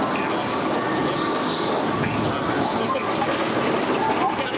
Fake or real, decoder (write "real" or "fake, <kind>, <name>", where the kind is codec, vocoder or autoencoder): real